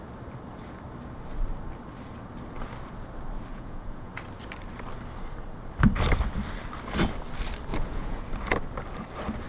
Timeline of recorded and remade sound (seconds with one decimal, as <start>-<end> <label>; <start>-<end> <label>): 0.0-3.5 recorded; 3.5-4.1 remade; 4.1-7.7 recorded; 7.7-8.2 remade; 8.2-9.5 recorded